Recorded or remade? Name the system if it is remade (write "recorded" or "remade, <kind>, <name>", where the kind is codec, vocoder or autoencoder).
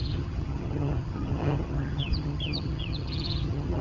remade, vocoder, HiFi-GAN